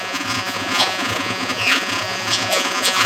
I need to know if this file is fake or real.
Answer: fake